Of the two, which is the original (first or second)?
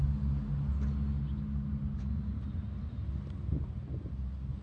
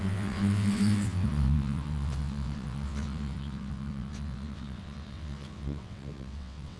first